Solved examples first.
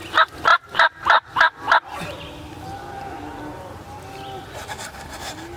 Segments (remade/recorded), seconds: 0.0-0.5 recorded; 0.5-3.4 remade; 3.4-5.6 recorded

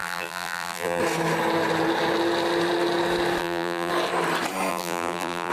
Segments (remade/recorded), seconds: 0.0-1.0 remade; 1.0-3.4 recorded; 3.4-3.9 remade; 3.9-4.7 recorded; 4.7-5.5 remade